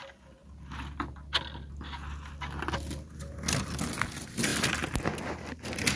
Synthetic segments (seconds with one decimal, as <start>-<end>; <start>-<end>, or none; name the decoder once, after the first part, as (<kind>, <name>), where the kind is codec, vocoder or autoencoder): none